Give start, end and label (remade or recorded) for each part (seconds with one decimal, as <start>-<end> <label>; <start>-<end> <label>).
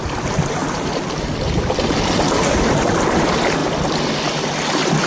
0.0-5.1 recorded